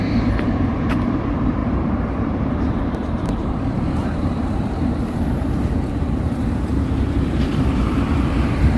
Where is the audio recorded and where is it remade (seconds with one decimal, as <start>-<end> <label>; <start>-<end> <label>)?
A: 0.0-8.8 remade